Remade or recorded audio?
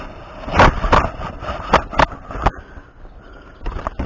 recorded